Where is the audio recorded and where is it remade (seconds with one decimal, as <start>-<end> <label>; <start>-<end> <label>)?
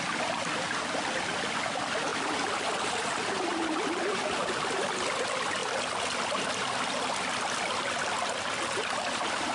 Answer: 0.0-9.5 recorded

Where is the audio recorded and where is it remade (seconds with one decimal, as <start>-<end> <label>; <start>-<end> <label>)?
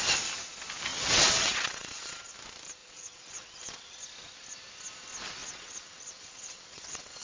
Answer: 0.0-0.9 recorded; 0.9-2.3 remade; 2.3-2.8 recorded; 2.8-4.0 remade; 4.0-5.4 recorded; 5.4-7.2 remade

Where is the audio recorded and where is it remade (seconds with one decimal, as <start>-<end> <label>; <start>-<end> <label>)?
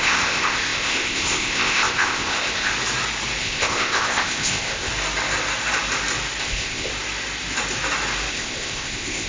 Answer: 0.0-2.7 remade; 2.7-3.4 recorded; 3.4-4.9 remade; 4.9-6.4 recorded; 6.4-6.9 remade; 6.9-8.3 recorded; 8.3-9.3 remade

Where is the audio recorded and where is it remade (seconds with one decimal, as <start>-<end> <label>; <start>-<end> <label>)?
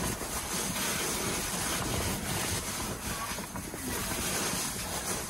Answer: 0.0-5.3 recorded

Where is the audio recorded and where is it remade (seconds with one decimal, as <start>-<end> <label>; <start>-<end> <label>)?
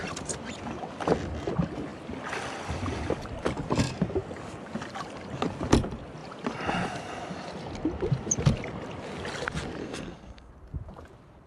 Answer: 0.0-9.8 recorded; 9.8-10.5 remade; 10.5-11.5 recorded